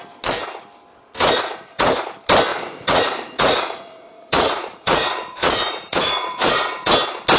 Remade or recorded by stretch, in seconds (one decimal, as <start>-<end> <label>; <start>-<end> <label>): 0.0-0.9 recorded; 0.9-2.0 remade; 2.0-2.5 recorded; 2.5-6.9 remade; 6.9-7.4 recorded